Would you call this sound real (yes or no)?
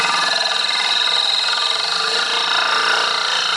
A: yes